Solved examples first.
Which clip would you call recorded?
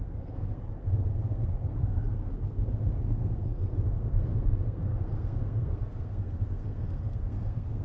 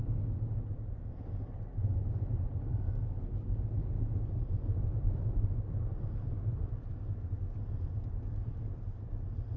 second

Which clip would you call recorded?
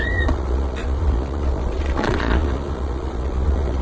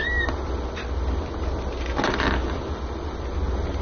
second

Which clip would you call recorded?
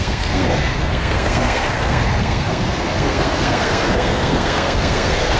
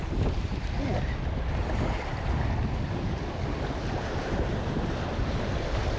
second